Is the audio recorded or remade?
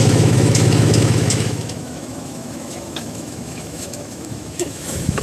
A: remade